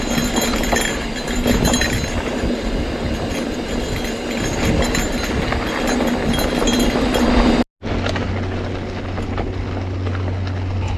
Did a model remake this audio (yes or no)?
no